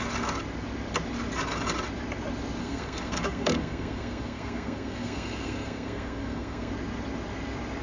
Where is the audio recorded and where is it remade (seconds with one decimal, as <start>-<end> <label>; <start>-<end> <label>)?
0.0-2.6 recorded; 2.6-6.7 remade; 6.7-7.8 recorded